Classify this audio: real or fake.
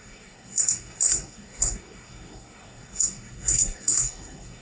fake